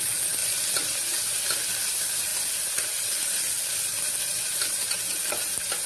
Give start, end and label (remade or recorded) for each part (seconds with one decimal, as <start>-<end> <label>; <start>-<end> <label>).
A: 0.0-5.9 recorded